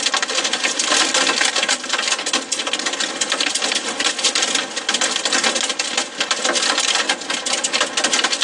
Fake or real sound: real